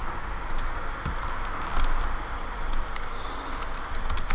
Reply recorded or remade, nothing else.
recorded